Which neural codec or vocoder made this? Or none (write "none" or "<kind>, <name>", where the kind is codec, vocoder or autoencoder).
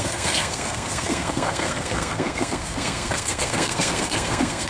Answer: codec, SNAC